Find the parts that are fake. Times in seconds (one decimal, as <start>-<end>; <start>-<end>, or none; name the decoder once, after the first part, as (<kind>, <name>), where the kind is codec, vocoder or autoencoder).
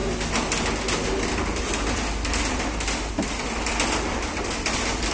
none